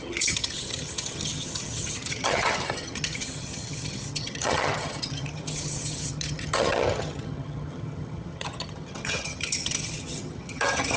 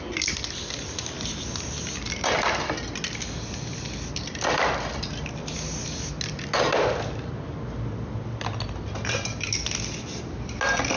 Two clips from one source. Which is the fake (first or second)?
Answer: first